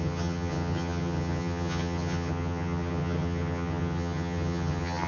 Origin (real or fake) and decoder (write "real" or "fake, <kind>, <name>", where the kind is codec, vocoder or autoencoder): fake, vocoder, HiFi-GAN